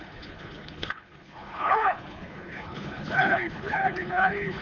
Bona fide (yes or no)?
no